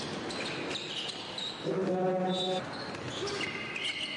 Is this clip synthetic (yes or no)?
no